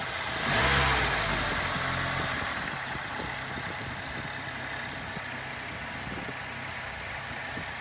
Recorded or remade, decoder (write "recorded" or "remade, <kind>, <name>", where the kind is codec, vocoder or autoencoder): recorded